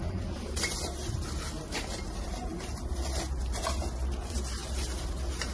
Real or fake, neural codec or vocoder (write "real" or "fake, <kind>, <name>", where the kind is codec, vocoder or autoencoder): fake, vocoder, BigVGAN v2